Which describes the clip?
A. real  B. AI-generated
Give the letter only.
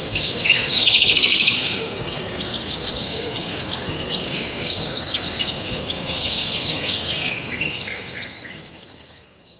B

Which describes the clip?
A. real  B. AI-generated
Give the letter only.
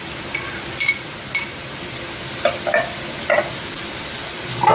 A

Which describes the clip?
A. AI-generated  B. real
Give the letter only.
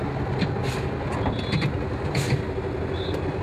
B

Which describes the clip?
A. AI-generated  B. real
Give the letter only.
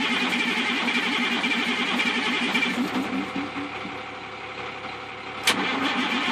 B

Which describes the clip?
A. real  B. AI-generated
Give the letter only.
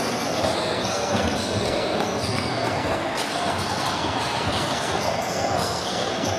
B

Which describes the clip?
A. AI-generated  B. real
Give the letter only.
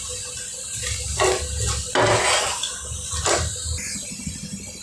B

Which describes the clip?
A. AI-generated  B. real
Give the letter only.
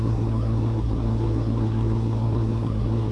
A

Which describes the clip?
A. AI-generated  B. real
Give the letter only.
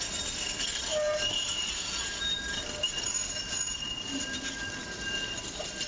B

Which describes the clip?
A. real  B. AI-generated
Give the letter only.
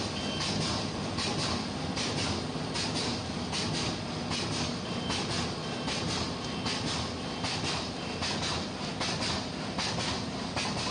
A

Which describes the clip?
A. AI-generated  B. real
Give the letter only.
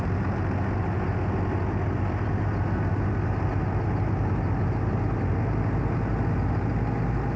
B